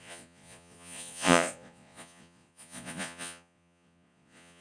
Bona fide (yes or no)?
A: no